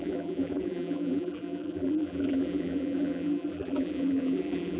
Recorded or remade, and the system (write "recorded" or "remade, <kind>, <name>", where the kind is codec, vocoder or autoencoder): remade, vocoder, BigVGAN v2